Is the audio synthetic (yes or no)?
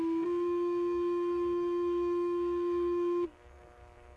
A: yes